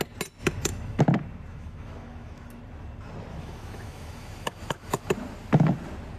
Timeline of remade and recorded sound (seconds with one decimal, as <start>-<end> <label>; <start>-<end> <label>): 0.0-0.4 recorded; 0.4-1.0 remade; 1.0-1.5 recorded; 1.5-2.6 remade; 2.6-3.3 recorded; 3.3-5.0 remade; 5.0-6.2 recorded